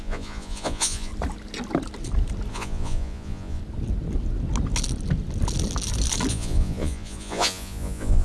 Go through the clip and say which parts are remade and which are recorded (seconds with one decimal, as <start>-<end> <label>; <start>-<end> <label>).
0.0-1.1 remade; 1.1-2.5 recorded; 2.5-3.6 remade; 3.6-6.3 recorded; 6.3-8.2 remade